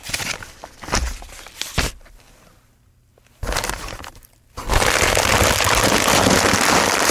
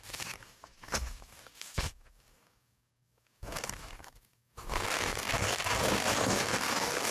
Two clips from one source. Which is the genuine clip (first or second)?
first